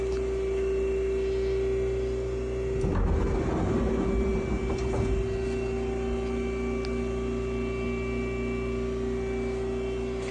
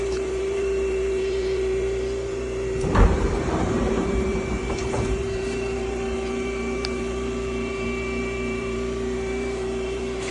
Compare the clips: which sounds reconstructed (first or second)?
second